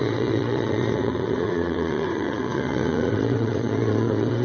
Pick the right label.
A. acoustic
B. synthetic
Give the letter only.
B